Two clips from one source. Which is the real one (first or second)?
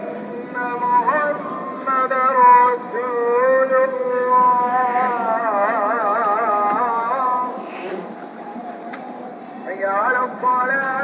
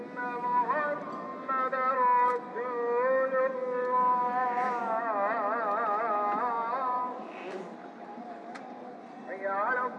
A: second